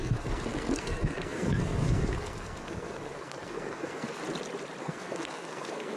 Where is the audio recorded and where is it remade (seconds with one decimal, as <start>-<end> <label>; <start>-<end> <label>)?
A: 0.0-4.2 remade; 4.2-4.8 recorded; 4.8-6.0 remade

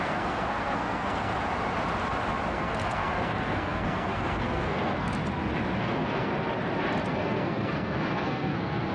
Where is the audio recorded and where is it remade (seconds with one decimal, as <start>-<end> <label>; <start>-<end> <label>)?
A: 0.0-1.3 remade; 1.3-2.5 recorded; 2.5-5.2 remade; 5.2-5.8 recorded; 5.8-6.3 remade; 6.3-7.0 recorded; 7.0-8.9 remade